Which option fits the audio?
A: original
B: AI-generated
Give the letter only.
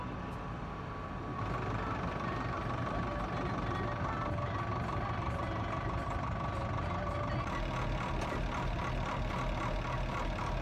A